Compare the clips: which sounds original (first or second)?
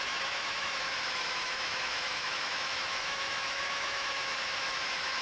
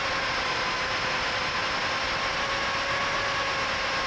second